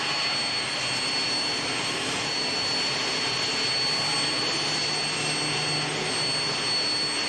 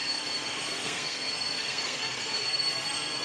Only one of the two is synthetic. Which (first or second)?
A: second